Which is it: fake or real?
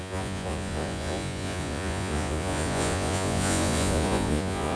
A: fake